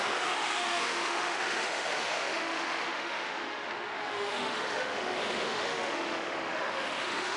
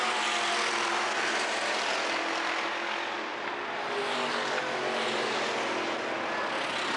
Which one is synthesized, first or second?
first